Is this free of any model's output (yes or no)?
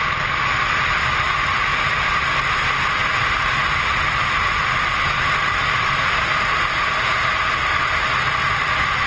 yes